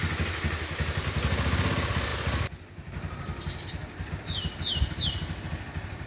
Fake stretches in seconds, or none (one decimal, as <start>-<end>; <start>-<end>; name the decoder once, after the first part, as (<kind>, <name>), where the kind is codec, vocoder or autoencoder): none